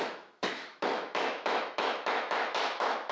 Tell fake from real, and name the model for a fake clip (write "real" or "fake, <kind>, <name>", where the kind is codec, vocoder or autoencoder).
fake, autoencoder, DAC-VAE